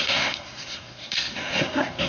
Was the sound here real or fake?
fake